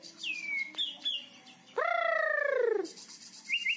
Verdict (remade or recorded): recorded